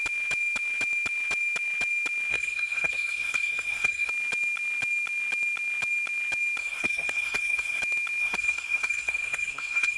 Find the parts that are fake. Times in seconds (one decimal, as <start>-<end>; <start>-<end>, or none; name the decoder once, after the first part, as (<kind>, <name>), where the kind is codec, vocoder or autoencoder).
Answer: 2.3-4.1 (codec, SNAC); 6.6-7.8; 8.2-10.0

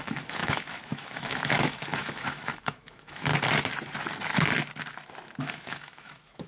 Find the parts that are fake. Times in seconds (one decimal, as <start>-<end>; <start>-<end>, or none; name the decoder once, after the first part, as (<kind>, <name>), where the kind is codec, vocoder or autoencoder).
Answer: 0.0-3.3 (autoencoder, DAC-VAE); 5.4-6.5

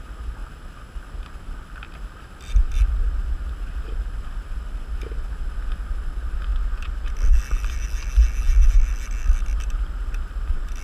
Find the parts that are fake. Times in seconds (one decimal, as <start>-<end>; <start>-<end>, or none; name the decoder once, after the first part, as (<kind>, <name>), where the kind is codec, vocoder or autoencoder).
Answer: none

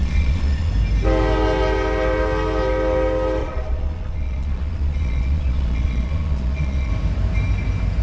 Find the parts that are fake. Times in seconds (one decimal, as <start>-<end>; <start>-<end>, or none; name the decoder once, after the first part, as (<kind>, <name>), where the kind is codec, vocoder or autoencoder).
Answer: 0.0-0.7 (vocoder, Vocos); 3.4-6.9

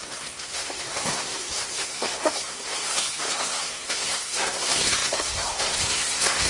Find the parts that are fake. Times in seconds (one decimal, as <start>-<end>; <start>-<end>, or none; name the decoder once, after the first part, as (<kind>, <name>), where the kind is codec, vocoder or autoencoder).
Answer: 0.0-6.5 (codec, SNAC)

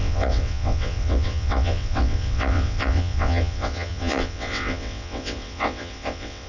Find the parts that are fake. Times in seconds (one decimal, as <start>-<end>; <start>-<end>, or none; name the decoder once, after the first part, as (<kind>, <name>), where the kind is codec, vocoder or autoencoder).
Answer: 0.0-6.5 (vocoder, WaveNeXt)

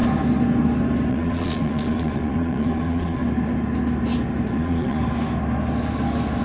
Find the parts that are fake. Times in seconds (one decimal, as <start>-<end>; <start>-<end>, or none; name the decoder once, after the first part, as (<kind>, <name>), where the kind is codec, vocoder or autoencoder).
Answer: 1.1-3.2 (vocoder, Vocos); 4.5-5.0

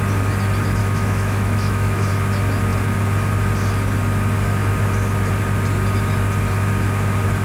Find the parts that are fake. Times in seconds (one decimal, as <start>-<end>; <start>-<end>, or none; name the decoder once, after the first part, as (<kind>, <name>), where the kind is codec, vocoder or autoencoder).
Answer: 0.8-2.1 (autoencoder, DAC-VAE)